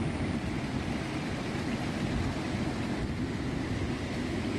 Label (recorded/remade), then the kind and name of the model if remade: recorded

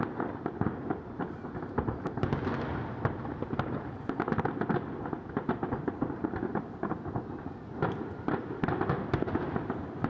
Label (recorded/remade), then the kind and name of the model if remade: recorded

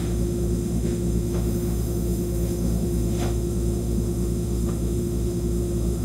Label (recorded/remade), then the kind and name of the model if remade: remade, autoencoder, DAC-VAE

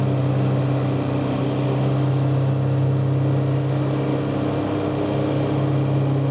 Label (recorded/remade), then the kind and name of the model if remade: recorded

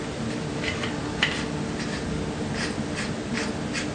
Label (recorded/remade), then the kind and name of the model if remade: recorded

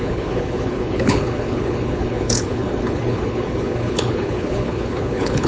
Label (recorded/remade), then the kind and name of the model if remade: remade, codec, HILCodec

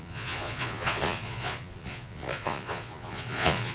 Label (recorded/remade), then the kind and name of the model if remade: remade, vocoder, Vocos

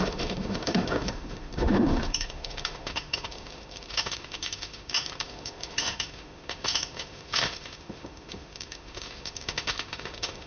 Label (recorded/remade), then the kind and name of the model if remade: remade, autoencoder, DAC-VAE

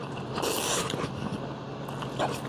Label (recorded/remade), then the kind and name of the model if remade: recorded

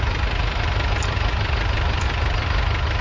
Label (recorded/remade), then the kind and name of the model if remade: recorded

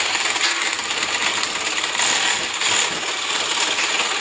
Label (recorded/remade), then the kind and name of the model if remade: recorded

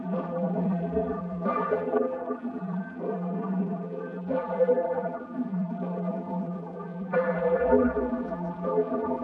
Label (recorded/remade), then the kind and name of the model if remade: remade, vocoder, BigVGAN v2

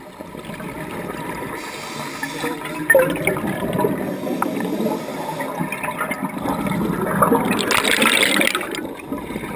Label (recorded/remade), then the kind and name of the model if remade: recorded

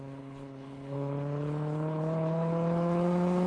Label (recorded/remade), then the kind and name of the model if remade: remade, codec, HILCodec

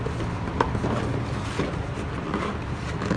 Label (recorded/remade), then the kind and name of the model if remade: recorded